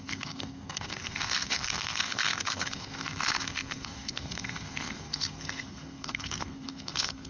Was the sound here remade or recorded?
remade